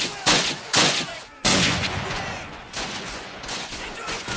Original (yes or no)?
no